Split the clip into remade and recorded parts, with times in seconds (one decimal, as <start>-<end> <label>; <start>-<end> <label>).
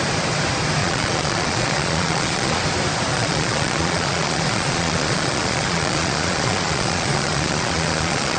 0.0-0.8 recorded; 0.8-2.6 remade; 2.6-3.1 recorded; 3.1-8.4 remade